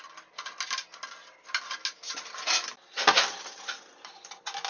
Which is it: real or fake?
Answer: real